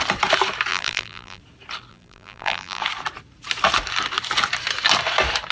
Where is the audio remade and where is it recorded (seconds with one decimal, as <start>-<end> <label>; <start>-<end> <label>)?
0.0-0.7 recorded; 0.7-1.4 remade; 1.4-1.9 recorded; 1.9-2.8 remade; 2.8-5.5 recorded